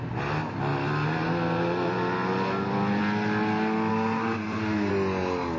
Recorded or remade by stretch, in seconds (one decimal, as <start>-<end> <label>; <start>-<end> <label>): 0.0-3.9 recorded; 3.9-4.9 remade; 4.9-5.6 recorded